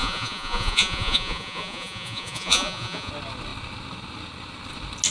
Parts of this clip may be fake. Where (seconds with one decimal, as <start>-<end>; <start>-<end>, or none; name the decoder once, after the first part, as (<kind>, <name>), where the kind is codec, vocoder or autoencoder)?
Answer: 0.0-3.1 (vocoder, Vocos)